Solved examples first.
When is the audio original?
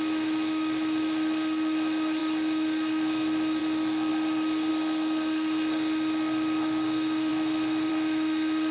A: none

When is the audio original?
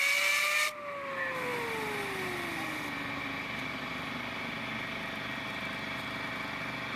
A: 0.0-7.0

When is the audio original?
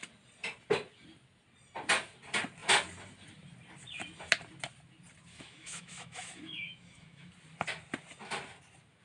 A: 0.0-5.3; 7.3-9.0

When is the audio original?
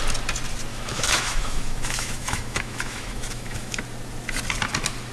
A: 0.0-0.7; 3.8-5.1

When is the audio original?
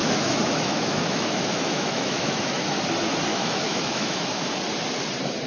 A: 2.8-3.3; 4.5-5.5